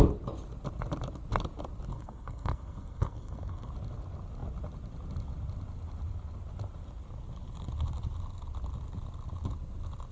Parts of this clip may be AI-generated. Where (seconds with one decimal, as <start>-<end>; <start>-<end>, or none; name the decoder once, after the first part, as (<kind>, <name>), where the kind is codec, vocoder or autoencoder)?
1.9-3.7 (codec, SNAC)